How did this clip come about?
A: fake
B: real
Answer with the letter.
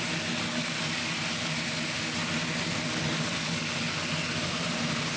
B